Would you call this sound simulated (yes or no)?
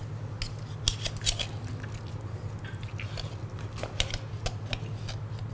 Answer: no